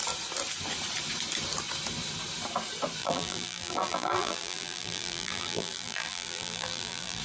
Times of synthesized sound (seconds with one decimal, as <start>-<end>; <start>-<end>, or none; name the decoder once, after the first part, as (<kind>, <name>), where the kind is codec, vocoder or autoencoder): 3.0-7.2 (vocoder, BigVGAN v2)